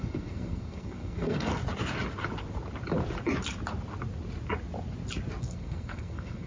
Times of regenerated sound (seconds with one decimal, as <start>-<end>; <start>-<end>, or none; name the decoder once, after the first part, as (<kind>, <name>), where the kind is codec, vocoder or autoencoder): 0.0-1.5 (codec, SNAC); 5.4-6.5